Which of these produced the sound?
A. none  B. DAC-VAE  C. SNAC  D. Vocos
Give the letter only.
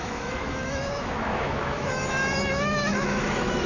B